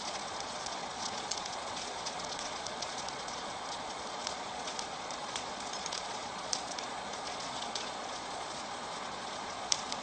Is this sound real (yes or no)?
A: no